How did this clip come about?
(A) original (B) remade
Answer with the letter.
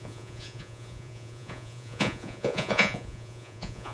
B